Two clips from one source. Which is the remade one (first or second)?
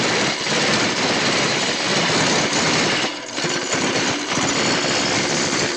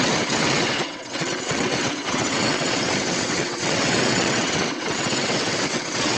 second